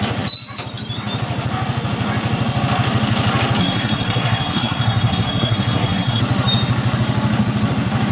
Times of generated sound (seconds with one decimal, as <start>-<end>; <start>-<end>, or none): 3.6-6.2